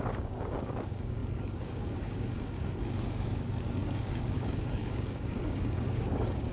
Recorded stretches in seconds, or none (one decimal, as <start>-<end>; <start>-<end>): none